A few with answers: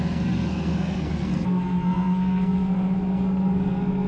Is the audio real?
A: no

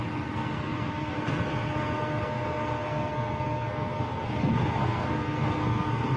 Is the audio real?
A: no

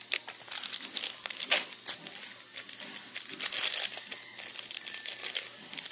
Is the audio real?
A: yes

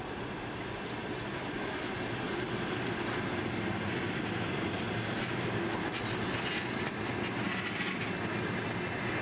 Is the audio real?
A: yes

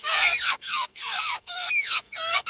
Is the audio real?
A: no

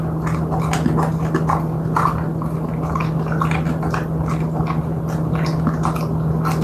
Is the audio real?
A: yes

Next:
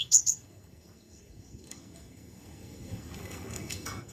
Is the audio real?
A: no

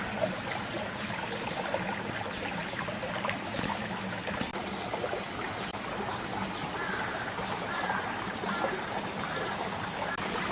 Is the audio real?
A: yes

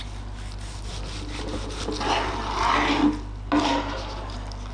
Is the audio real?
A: yes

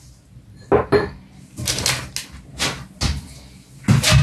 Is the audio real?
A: yes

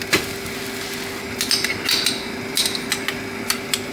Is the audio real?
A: yes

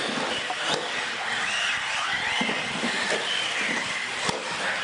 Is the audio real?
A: yes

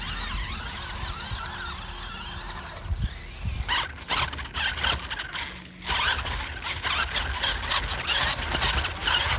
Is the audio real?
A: yes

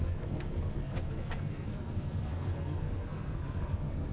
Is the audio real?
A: no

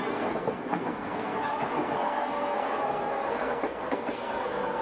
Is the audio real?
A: no